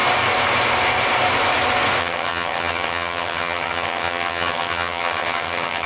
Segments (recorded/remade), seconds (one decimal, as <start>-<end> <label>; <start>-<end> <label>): 0.0-2.0 recorded; 2.0-5.9 remade

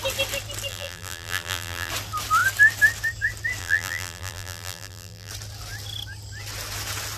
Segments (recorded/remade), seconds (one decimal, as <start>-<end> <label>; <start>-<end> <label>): 0.0-0.7 recorded; 0.7-1.9 remade; 1.9-3.6 recorded; 3.6-5.3 remade; 5.3-7.2 recorded

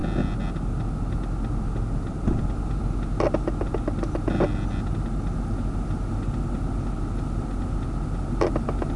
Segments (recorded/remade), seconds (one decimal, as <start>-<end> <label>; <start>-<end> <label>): 0.0-9.0 recorded

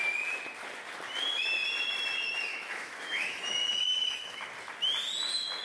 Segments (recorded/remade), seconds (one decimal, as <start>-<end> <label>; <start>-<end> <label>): 0.0-2.5 recorded; 2.5-4.5 remade; 4.5-5.6 recorded

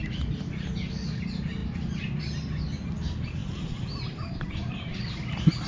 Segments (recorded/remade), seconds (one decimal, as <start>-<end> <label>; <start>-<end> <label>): 0.0-3.4 recorded; 3.4-5.0 remade; 5.0-5.7 recorded

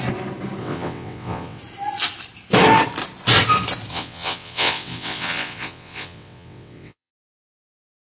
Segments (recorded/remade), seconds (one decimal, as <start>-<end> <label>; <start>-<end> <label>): 0.0-0.6 recorded; 0.6-1.6 remade; 1.6-3.9 recorded; 3.9-7.1 remade; 7.1-8.0 recorded

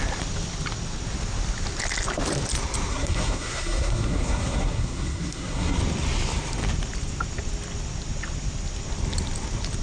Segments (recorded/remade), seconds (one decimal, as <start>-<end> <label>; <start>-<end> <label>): 0.0-2.9 recorded; 2.9-5.8 remade; 5.8-9.8 recorded

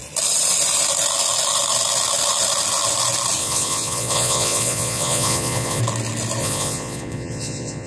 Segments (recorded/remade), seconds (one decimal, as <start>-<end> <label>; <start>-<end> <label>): 0.0-3.4 recorded; 3.4-5.8 remade; 5.8-6.4 recorded; 6.4-7.9 remade